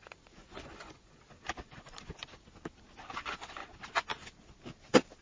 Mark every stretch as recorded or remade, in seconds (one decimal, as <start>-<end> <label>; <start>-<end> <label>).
0.0-0.4 recorded; 0.4-1.2 remade; 1.2-5.2 recorded